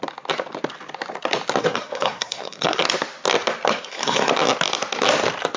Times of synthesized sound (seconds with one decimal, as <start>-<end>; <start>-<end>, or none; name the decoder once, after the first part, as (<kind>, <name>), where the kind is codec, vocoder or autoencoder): 1.6-2.8 (codec, SNAC); 3.7-4.3